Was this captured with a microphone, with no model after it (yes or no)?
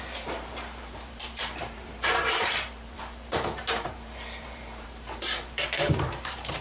no